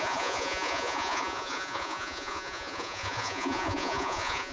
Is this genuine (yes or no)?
no